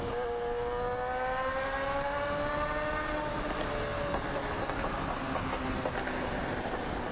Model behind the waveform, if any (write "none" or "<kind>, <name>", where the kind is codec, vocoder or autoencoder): none